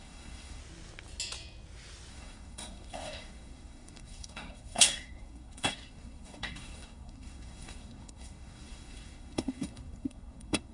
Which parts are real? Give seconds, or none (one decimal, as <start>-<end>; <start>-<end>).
0.6-2.1